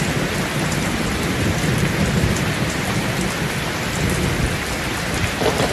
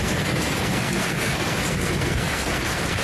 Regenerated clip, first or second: second